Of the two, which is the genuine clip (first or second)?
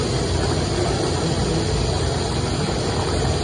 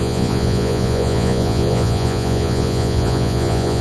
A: first